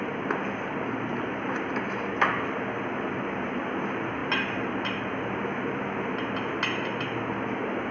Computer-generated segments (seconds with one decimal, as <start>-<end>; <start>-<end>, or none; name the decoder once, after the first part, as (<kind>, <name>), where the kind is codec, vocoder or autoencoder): 1.1-1.7 (vocoder, BigVGAN v2)